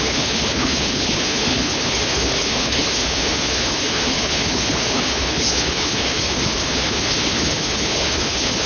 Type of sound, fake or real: fake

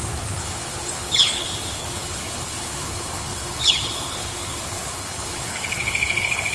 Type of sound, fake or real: fake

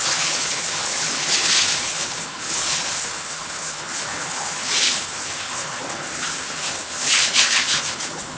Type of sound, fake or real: fake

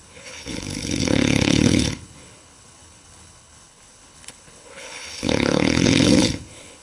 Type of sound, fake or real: fake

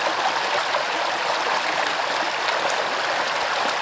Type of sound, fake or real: real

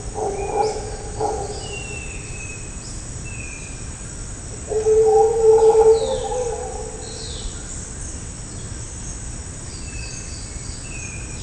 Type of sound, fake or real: real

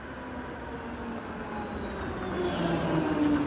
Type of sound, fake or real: real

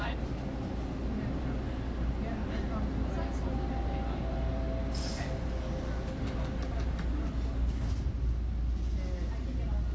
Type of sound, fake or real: real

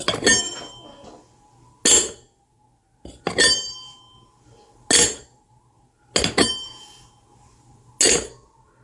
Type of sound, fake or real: real